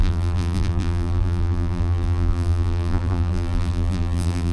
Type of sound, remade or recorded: remade